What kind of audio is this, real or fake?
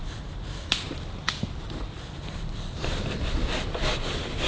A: fake